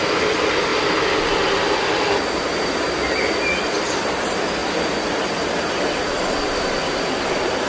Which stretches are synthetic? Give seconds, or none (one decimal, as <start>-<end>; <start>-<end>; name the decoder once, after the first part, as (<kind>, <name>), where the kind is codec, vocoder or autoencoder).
none